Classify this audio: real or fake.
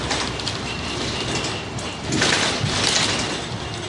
real